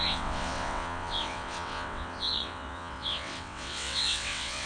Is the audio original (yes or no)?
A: no